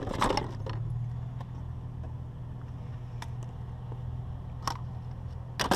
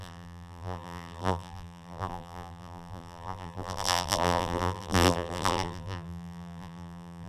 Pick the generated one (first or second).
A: second